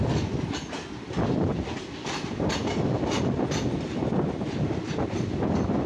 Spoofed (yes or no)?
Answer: no